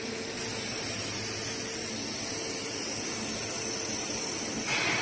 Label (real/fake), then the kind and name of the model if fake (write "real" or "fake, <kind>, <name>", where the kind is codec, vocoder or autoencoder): real